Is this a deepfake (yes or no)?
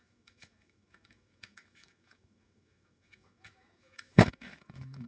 yes